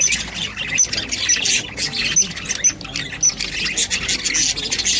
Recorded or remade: recorded